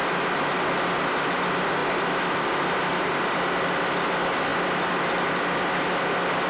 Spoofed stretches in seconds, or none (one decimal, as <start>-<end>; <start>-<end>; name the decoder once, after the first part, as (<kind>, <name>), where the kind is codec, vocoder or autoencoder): none